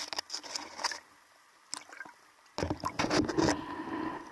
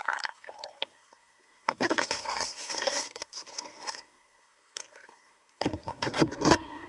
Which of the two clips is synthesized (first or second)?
second